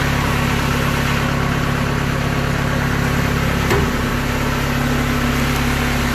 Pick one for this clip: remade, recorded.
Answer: recorded